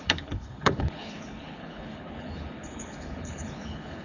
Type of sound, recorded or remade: remade